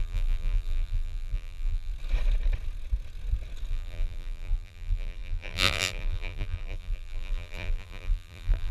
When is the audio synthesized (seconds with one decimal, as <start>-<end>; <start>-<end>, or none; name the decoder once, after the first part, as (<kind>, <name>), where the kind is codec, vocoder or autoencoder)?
0.0-1.9 (vocoder, BigVGAN v2); 3.7-8.7